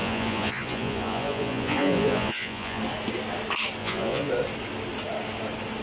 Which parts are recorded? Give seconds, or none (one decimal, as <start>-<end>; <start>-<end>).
2.8-3.8; 4.3-5.8